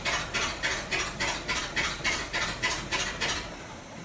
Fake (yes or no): no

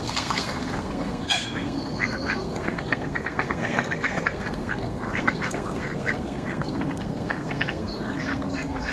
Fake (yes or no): yes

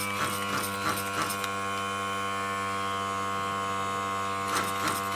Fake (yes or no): no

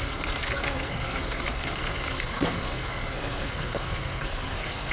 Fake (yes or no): yes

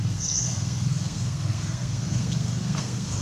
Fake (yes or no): yes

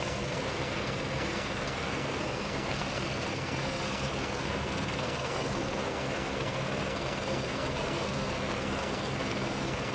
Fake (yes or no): yes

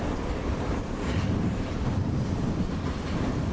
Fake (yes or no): no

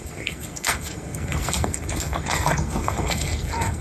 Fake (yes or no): yes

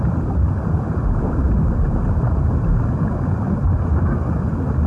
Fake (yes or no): no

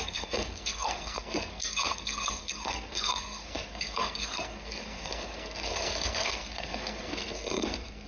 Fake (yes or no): yes